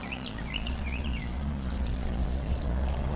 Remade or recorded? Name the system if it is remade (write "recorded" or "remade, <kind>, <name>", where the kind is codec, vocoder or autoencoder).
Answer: remade, vocoder, Vocos